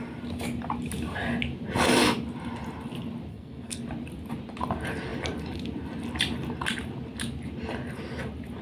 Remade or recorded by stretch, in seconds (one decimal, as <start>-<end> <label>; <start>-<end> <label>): 0.0-3.3 recorded; 3.3-3.8 remade; 3.8-8.6 recorded

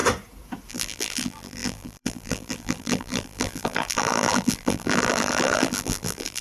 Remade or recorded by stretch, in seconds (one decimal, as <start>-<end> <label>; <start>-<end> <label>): 0.0-0.7 recorded; 0.7-6.4 remade

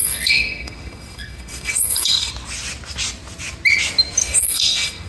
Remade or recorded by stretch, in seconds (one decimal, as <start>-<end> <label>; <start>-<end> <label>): 0.0-2.3 remade; 2.3-4.2 recorded; 4.2-5.1 remade